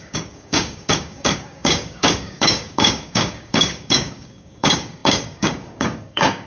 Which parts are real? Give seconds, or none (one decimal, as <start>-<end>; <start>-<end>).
none